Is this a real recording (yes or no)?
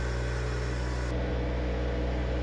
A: yes